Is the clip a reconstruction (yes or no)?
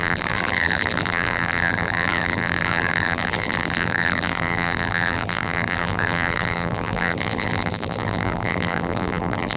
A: yes